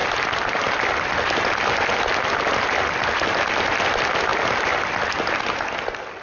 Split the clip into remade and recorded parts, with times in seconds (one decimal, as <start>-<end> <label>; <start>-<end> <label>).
0.0-6.2 recorded